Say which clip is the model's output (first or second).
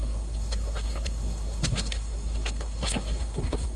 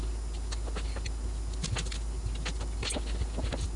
first